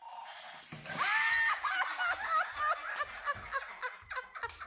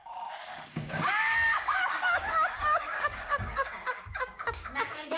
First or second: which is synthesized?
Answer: second